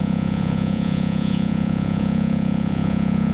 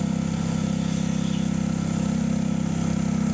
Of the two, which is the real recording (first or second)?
second